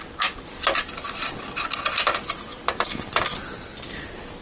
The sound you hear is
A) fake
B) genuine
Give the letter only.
B